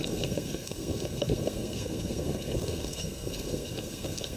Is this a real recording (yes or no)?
no